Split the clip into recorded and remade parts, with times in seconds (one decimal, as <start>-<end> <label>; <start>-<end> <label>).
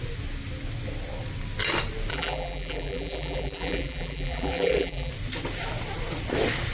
0.0-2.1 recorded; 2.1-5.1 remade; 5.1-6.7 recorded